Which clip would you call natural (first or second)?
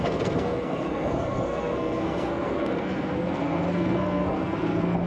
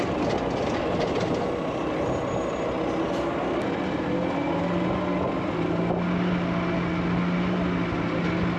second